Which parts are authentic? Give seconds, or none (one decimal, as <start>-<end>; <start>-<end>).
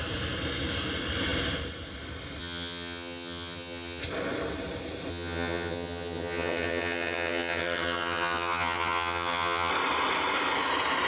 0.0-2.4; 4.0-5.1; 9.7-11.1